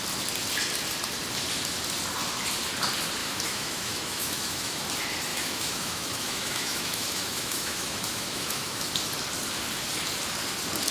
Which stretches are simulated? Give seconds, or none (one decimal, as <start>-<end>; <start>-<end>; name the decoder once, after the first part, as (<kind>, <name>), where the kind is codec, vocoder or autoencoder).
3.2-4.8 (autoencoder, DAC-VAE); 5.3-8.9